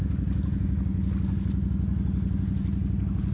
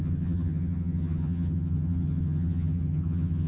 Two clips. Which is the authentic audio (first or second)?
first